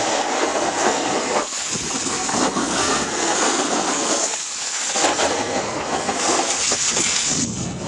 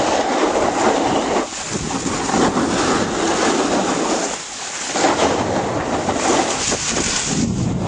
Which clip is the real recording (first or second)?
second